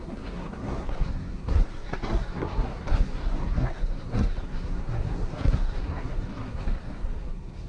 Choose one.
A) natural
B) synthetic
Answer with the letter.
B